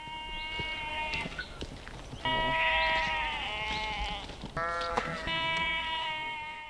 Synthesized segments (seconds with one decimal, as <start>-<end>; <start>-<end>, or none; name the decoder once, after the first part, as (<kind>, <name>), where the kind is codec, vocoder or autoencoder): 0.9-1.4 (codec, SNAC); 4.9-6.7